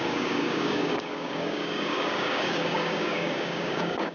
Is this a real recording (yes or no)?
no